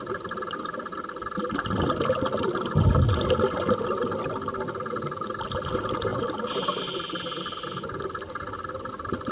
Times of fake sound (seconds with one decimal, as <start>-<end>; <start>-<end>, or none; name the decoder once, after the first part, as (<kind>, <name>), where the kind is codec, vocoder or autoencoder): none